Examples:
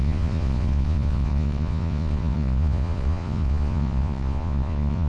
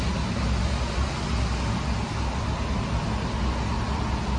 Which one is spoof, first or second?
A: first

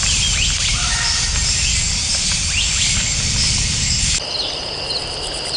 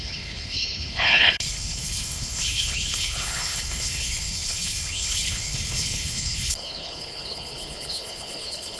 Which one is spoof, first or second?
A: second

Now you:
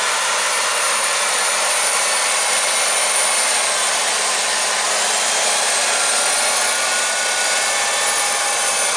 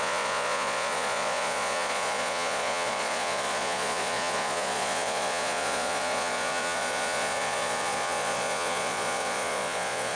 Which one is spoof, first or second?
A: second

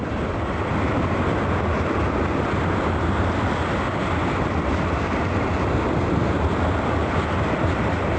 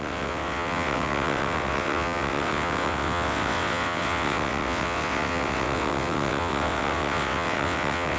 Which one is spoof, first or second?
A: second